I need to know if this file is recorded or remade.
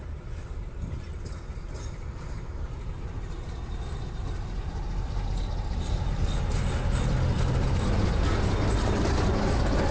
recorded